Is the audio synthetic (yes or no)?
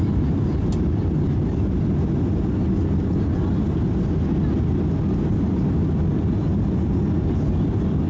no